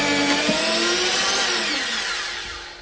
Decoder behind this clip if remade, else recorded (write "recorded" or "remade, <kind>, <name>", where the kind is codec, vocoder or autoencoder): recorded